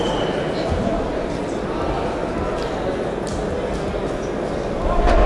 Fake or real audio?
real